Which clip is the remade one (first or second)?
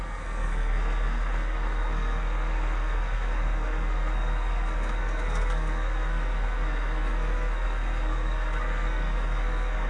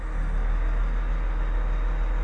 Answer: first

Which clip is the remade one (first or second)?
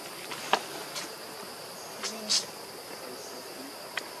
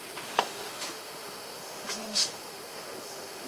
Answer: second